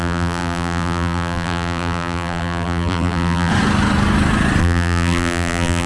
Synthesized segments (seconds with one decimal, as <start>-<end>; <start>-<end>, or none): 0.0-3.5; 4.6-5.9